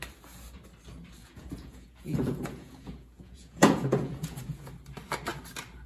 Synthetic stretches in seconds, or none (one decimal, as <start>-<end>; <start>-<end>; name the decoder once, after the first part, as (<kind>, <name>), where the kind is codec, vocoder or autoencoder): 1.2-4.7 (vocoder, Vocos)